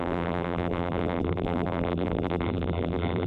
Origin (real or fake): fake